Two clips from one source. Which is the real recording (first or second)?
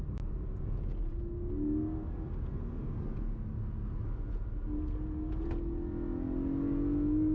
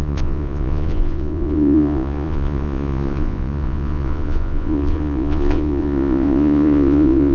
first